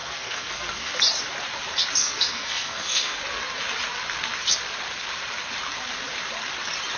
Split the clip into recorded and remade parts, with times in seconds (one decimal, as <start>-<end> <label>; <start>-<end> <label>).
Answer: 0.0-1.0 remade; 1.0-2.0 recorded; 2.0-3.2 remade; 3.2-7.0 recorded